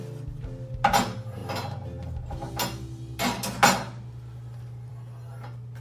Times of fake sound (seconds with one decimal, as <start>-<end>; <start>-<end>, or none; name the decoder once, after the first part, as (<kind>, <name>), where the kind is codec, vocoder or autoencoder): none

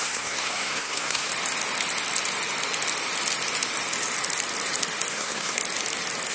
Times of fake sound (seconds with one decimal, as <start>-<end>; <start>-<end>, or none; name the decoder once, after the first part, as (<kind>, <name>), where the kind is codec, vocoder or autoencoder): 0.0-1.3 (codec, SNAC); 5.1-5.6

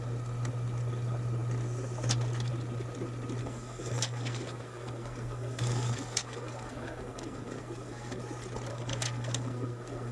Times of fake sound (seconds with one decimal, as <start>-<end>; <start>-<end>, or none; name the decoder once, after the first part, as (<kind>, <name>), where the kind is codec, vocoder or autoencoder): 3.4-8.2 (codec, SNAC); 8.7-10.1

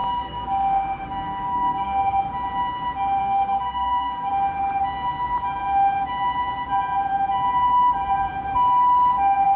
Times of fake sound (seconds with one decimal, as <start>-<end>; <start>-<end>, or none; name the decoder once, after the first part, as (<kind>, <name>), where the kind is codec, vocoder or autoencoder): 0.0-2.2 (codec, SNAC); 3.2-4.3